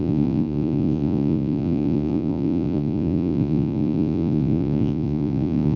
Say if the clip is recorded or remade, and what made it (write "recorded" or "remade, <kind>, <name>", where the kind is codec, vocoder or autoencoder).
remade, vocoder, Vocos